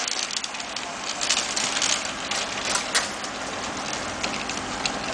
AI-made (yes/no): no